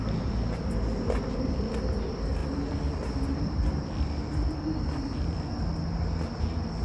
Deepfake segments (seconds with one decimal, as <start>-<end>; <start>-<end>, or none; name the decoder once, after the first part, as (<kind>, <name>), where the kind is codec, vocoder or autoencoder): 2.4-4.1 (vocoder, BigVGAN v2)

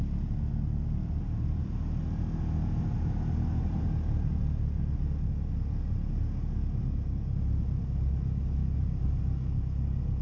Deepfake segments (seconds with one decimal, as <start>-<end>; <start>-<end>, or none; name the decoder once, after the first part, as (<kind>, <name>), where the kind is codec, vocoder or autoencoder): 8.6-9.1 (vocoder, BigVGAN v2)

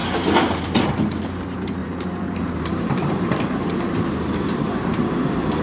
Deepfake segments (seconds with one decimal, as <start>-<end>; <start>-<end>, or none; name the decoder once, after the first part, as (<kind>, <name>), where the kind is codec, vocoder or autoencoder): 1.8-4.1 (vocoder, BigVGAN v2)

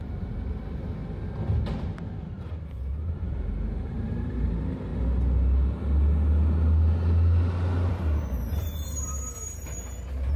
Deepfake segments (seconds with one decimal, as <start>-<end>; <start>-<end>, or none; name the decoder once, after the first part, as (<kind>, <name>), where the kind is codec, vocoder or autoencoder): 0.0-1.0 (vocoder, BigVGAN v2); 2.4-4.9; 7.9-10.4

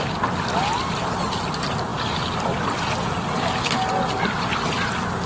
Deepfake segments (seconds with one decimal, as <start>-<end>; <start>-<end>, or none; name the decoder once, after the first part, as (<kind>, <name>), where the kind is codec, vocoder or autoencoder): none